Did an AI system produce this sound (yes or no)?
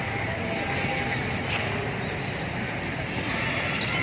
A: no